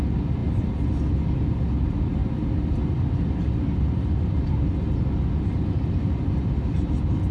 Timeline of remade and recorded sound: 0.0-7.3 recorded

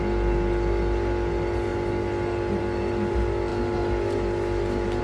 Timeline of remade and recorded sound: 0.0-5.0 recorded

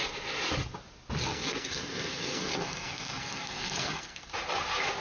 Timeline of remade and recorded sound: 0.0-1.3 recorded; 1.3-4.3 remade; 4.3-5.0 recorded

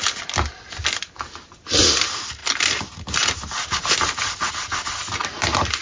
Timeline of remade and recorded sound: 0.0-5.8 recorded

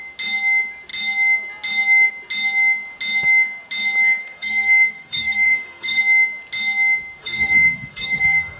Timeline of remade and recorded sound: 0.0-4.2 recorded; 4.2-6.0 remade; 6.0-7.2 recorded; 7.2-8.6 remade

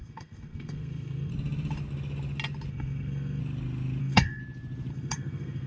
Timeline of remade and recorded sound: 0.0-1.3 remade; 1.3-2.7 recorded; 2.7-3.4 remade; 3.4-4.0 recorded; 4.0-4.4 remade; 4.4-4.9 recorded; 4.9-5.7 remade

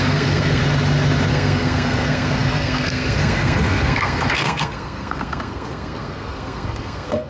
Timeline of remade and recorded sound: 0.0-0.6 remade; 0.6-1.3 recorded; 1.3-7.3 remade